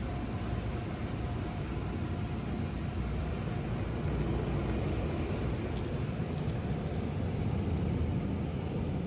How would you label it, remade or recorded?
recorded